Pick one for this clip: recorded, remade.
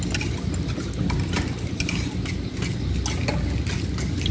recorded